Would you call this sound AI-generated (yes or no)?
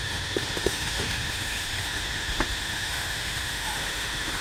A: yes